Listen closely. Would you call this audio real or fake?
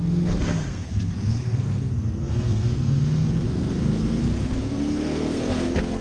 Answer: fake